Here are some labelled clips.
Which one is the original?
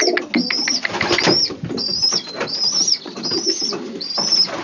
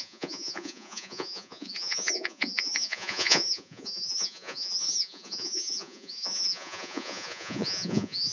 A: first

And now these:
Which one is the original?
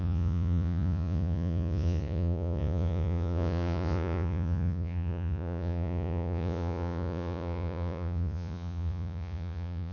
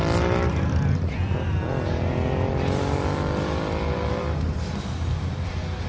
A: second